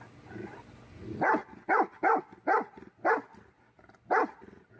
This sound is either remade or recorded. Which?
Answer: recorded